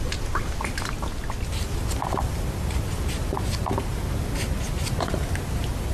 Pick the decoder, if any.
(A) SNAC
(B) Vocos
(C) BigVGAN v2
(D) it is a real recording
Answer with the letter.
D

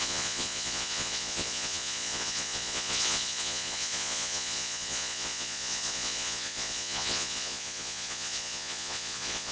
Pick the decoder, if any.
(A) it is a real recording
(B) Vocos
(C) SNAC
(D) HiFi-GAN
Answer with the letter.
B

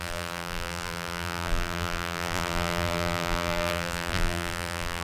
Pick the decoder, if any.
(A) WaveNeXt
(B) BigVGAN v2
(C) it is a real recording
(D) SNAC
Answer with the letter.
B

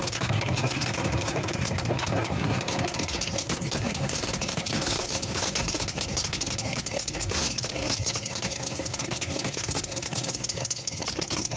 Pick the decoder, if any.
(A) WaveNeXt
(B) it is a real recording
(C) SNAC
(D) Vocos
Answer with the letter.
C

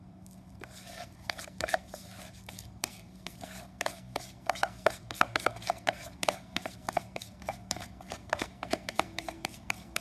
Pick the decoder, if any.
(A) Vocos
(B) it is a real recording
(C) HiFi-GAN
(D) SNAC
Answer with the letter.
D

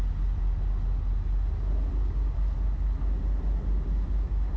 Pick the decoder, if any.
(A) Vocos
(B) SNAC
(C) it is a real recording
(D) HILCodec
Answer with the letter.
C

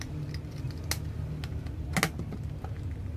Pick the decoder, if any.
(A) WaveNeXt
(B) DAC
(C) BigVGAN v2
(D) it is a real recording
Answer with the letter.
D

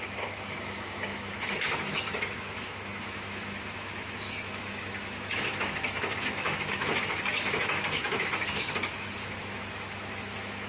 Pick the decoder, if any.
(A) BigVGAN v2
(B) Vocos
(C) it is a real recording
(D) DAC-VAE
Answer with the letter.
D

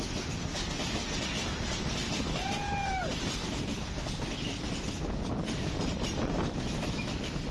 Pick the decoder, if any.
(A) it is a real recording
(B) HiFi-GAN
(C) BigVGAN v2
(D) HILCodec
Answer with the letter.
A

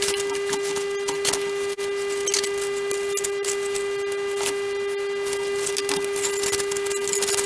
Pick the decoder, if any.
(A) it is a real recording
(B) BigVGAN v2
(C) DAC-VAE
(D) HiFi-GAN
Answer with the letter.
A